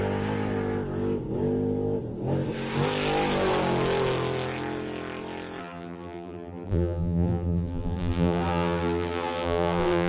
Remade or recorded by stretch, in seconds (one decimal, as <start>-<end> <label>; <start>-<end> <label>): 0.0-5.6 recorded; 5.6-10.1 remade